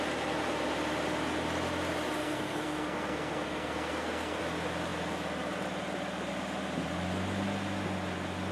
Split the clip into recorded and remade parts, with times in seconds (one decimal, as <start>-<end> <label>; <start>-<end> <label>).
0.0-2.2 recorded; 2.2-4.4 remade; 4.4-8.5 recorded